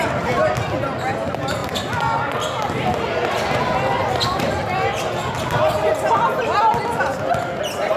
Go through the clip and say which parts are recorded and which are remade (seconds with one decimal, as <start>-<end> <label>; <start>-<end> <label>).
0.0-8.0 recorded